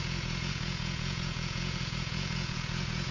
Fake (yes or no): yes